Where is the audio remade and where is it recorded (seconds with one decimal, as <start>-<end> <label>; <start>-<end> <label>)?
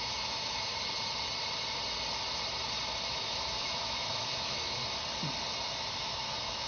0.0-0.7 remade; 0.7-3.1 recorded; 3.1-4.8 remade; 4.8-6.0 recorded; 6.0-6.7 remade